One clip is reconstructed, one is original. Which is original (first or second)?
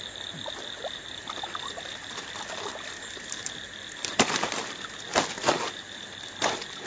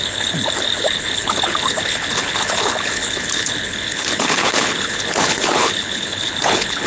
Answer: first